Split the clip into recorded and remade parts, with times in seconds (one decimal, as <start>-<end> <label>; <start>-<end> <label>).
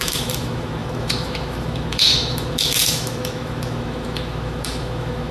0.0-5.3 remade